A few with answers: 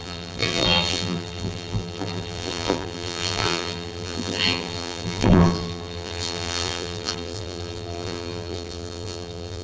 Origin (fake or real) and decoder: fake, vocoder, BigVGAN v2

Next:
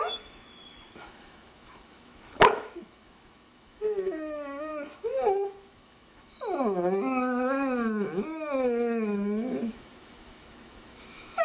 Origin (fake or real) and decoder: fake, autoencoder, DAC-VAE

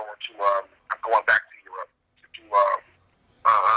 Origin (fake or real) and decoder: real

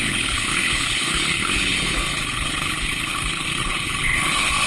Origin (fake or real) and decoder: fake, codec, HILCodec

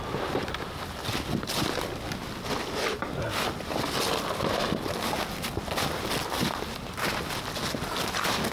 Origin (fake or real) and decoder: real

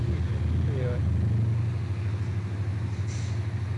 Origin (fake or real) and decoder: real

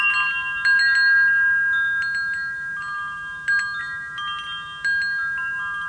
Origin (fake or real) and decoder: real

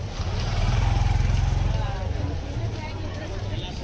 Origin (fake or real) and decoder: real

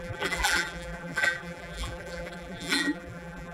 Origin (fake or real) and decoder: fake, vocoder, BigVGAN v2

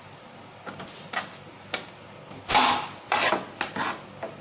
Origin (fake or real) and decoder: real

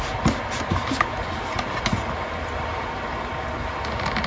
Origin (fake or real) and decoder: real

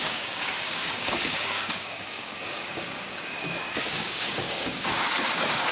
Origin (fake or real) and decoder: fake, codec, DAC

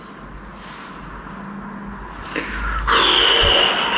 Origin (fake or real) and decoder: real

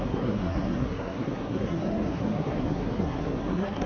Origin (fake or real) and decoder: fake, codec, SNAC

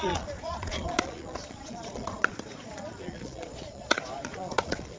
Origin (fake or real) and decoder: fake, vocoder, Vocos